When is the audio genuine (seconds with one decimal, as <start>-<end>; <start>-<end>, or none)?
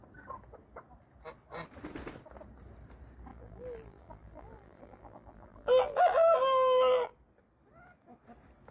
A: 0.0-3.3; 7.1-8.7